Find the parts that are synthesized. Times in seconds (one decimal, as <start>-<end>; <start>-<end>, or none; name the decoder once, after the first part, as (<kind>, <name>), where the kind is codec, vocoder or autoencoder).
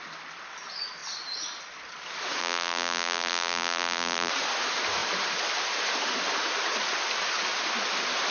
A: 2.4-4.3 (vocoder, BigVGAN v2)